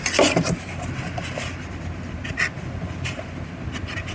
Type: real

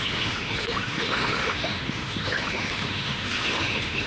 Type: fake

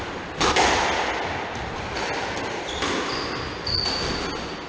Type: real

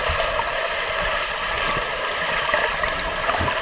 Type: real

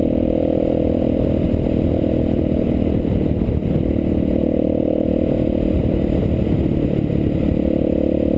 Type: real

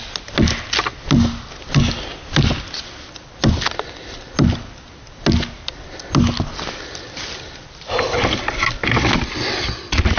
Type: real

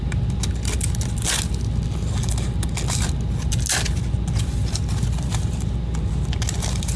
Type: real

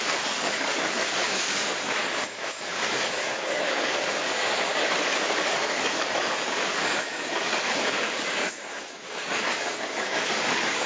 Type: fake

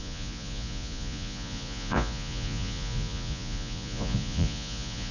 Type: fake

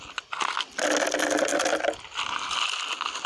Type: real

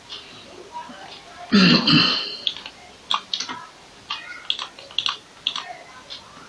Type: real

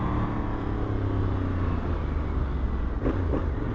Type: real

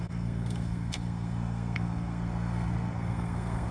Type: fake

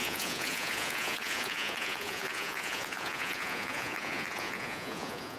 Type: fake